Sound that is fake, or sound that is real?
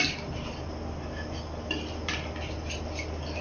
real